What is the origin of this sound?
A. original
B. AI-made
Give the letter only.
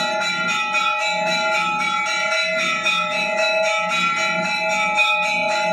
A